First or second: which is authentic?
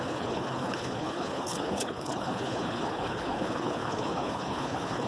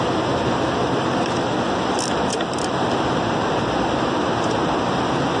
second